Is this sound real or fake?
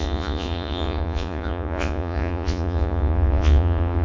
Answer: fake